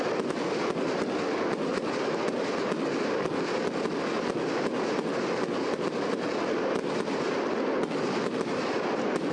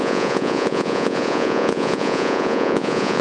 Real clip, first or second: first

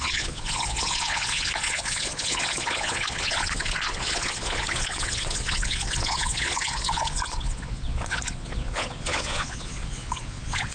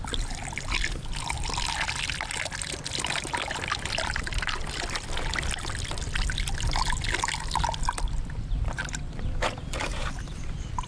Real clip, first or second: second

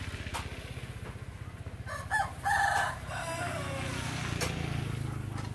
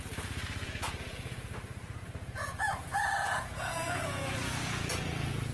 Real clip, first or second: first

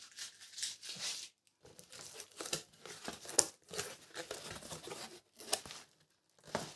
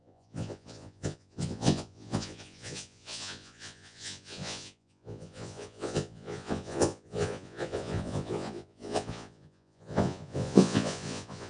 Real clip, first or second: first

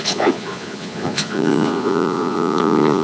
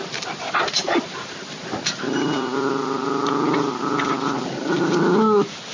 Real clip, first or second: second